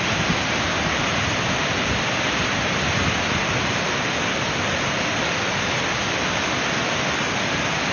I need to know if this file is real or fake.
real